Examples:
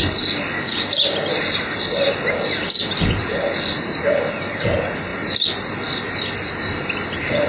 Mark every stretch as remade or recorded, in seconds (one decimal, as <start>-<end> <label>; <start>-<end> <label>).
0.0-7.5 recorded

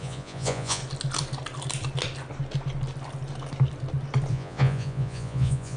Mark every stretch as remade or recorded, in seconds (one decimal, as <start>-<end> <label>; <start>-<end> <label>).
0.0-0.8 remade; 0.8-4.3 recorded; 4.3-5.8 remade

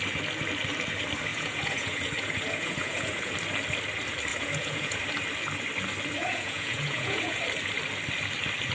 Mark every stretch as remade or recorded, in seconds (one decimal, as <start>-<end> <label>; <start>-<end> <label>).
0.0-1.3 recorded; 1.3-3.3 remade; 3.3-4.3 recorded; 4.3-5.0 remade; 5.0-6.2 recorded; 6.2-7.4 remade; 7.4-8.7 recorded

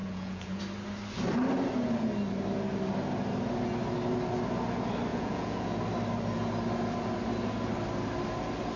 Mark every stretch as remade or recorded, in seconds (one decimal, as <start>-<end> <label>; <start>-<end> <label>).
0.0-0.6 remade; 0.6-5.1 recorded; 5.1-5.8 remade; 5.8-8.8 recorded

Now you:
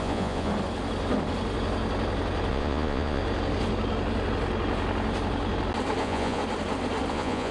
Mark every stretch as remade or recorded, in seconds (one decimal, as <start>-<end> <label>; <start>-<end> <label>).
0.0-0.5 remade; 0.5-2.5 recorded; 2.5-3.2 remade; 3.2-6.0 recorded; 6.0-6.4 remade; 6.4-7.1 recorded; 7.1-7.5 remade